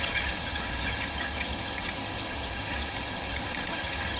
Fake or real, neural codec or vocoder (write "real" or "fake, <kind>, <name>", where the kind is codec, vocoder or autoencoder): fake, vocoder, HiFi-GAN